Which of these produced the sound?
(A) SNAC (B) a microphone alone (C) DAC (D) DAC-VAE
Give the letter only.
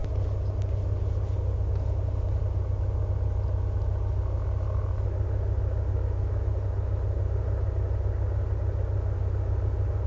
B